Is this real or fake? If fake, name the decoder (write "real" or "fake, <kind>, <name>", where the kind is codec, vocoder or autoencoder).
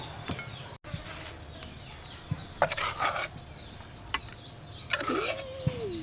real